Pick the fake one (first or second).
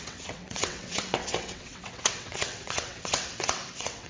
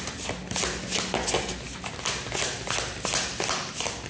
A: first